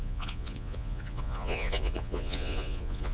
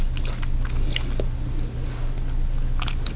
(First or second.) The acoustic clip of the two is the second